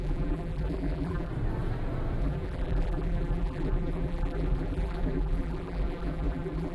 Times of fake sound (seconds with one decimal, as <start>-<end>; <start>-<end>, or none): 0.0-1.3; 2.2-6.7